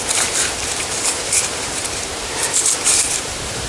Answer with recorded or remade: remade